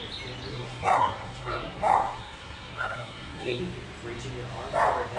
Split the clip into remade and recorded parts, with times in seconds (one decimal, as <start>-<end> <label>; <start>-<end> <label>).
0.0-0.5 recorded; 0.5-3.6 remade; 3.6-5.2 recorded